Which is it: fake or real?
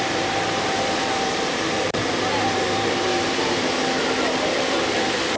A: fake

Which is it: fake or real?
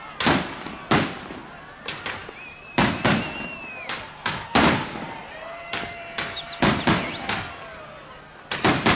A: real